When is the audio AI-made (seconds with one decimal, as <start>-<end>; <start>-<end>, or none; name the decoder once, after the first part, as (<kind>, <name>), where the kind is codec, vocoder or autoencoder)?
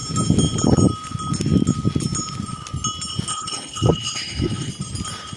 3.3-4.7 (codec, HILCodec)